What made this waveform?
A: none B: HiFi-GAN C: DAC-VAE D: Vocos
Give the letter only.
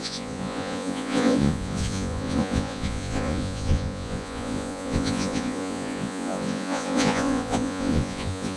D